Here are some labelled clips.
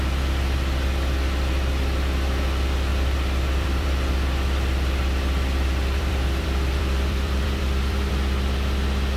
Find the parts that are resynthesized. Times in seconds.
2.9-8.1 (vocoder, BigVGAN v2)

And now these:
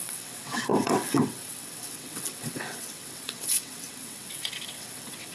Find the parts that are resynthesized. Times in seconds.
0.0-5.3 (vocoder, WaveNeXt)